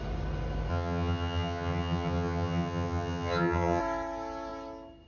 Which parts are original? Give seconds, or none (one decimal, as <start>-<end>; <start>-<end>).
0.0-0.7; 3.8-5.1